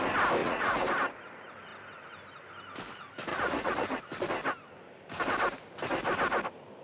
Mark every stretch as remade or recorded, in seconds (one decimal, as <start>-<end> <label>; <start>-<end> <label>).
0.0-0.4 recorded; 0.4-0.9 remade; 0.9-3.3 recorded; 3.3-4.0 remade; 4.0-6.8 recorded